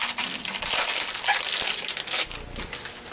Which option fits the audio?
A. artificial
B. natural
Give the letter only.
B